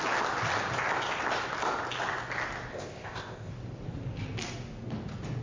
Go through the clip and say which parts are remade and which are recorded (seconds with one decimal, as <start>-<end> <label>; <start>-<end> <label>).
0.0-2.7 recorded; 2.7-3.5 remade; 3.5-5.4 recorded